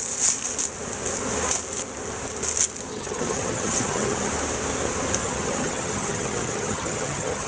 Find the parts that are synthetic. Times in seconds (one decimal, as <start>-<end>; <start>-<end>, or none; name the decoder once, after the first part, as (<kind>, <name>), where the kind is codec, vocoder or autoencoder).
2.9-4.3 (vocoder, HiFi-GAN); 5.2-7.5